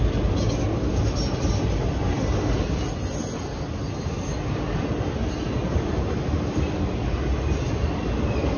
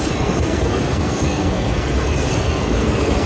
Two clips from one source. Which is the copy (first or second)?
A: second